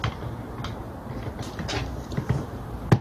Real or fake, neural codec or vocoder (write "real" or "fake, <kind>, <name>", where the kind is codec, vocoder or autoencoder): real